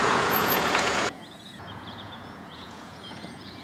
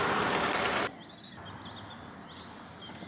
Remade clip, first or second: first